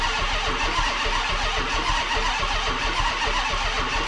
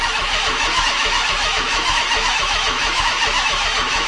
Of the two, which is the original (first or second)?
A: first